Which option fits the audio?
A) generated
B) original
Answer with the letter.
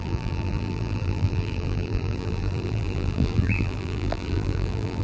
A